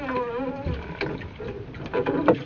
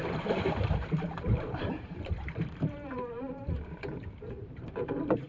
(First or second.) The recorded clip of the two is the first